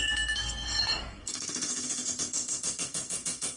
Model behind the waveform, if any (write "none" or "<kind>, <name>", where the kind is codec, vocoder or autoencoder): codec, SNAC